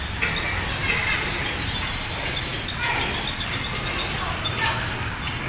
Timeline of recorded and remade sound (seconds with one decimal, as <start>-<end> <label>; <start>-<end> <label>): 0.0-0.8 recorded; 0.8-2.0 remade; 2.0-5.5 recorded